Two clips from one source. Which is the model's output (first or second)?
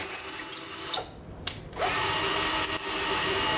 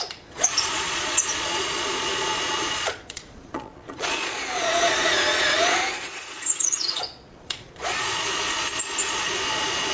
second